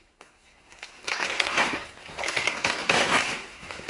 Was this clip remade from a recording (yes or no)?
yes